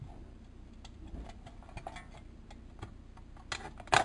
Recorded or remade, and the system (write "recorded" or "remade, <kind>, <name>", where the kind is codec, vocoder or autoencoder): recorded